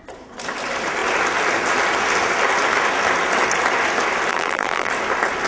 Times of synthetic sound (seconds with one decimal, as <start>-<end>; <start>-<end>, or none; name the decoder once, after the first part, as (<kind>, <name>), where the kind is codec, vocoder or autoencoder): 4.3-4.9 (vocoder, BigVGAN v2)